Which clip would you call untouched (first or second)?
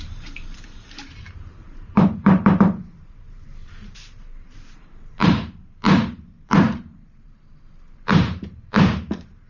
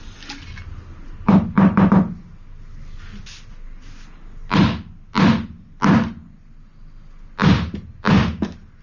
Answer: second